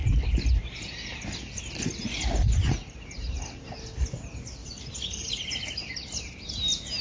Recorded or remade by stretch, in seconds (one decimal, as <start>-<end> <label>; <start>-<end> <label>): 0.0-7.0 recorded